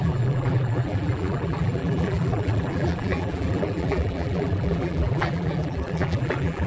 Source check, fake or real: fake